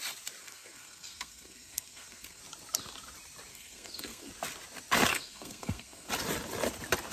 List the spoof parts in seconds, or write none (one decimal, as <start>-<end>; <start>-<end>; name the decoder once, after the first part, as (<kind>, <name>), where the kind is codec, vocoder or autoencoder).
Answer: 0.4-2.4 (codec, SNAC); 3.5-4.3; 5.1-6.1